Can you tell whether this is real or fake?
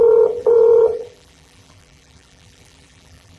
fake